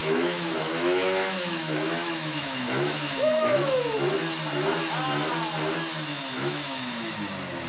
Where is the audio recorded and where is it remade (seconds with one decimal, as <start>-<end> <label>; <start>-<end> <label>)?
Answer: 0.0-3.8 remade; 3.8-6.1 recorded; 6.1-7.1 remade; 7.1-7.7 recorded